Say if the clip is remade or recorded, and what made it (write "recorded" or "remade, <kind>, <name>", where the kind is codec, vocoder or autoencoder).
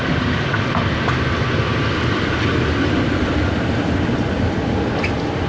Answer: recorded